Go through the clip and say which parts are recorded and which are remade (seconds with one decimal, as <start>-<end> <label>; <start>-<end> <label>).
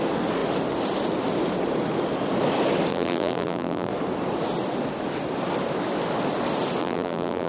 0.0-2.9 recorded; 2.9-3.9 remade; 3.9-6.8 recorded; 6.8-7.5 remade